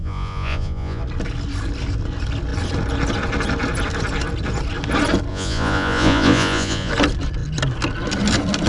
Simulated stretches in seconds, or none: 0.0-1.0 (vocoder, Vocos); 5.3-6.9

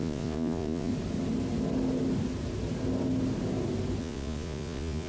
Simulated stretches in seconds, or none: 0.0-0.9 (vocoder, Vocos); 4.0-5.1

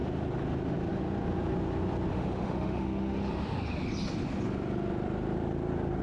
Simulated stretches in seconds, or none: 2.1-3.3 (autoencoder, DAC-VAE)

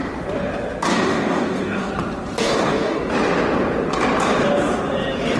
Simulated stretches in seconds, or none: 0.9-1.9 (codec, DAC); 2.4-3.0

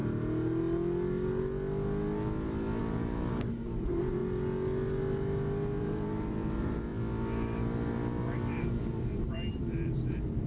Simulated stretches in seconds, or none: 2.8-4.2 (vocoder, BigVGAN v2); 5.8-6.9; 9.5-10.5

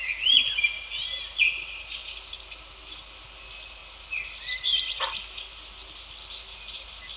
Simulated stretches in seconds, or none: none

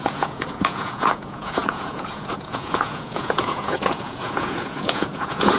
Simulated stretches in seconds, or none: 0.0-5.6 (vocoder, Vocos)

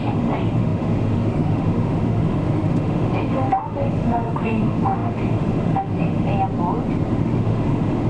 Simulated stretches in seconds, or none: 0.0-6.3 (autoencoder, DAC-VAE); 7.1-8.1